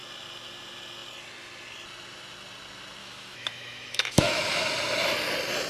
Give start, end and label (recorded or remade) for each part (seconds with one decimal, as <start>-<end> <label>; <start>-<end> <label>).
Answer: 0.0-3.0 recorded; 3.0-4.4 remade; 4.4-5.7 recorded